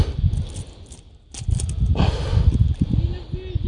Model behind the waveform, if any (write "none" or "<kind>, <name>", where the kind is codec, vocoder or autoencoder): none